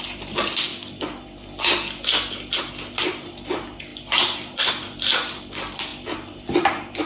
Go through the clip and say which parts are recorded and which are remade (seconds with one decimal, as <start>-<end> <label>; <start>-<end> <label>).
0.0-0.7 remade; 0.7-2.6 recorded; 2.6-5.9 remade; 5.9-7.1 recorded